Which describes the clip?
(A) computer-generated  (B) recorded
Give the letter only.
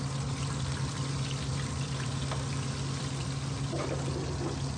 B